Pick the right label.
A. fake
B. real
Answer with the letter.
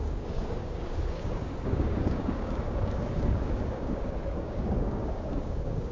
A